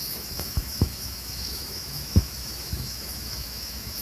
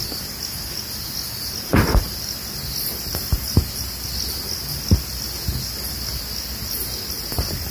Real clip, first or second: second